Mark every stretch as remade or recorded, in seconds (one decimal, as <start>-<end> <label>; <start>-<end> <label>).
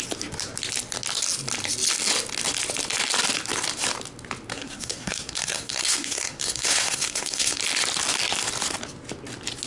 0.0-4.5 recorded; 4.5-7.6 remade; 7.6-9.7 recorded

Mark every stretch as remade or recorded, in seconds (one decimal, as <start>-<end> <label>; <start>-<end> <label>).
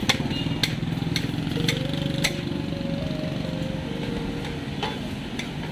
0.0-5.7 recorded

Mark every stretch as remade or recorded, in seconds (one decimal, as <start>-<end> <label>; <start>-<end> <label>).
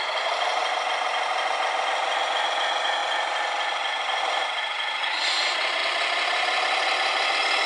0.0-7.7 recorded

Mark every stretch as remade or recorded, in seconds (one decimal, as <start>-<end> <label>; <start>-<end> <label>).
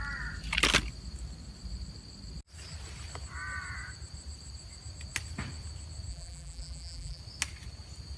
0.0-6.1 recorded; 6.1-7.2 remade; 7.2-8.2 recorded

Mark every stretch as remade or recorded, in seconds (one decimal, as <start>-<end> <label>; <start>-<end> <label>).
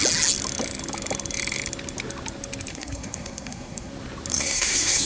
0.0-2.7 recorded; 2.7-3.9 remade; 3.9-4.3 recorded; 4.3-5.1 remade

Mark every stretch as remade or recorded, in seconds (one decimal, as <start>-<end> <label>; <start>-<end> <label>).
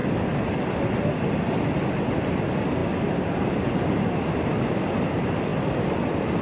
0.0-0.6 recorded; 0.6-5.5 remade; 5.5-6.4 recorded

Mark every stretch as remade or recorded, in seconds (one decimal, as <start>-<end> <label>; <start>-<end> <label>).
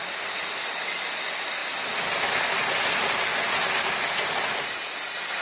0.0-5.4 recorded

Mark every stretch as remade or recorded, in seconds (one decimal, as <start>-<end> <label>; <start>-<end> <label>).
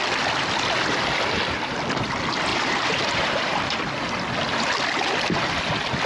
0.0-2.5 recorded; 2.5-3.9 remade; 3.9-6.1 recorded